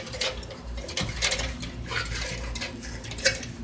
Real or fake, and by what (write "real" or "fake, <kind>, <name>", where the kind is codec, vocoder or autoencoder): fake, vocoder, BigVGAN v2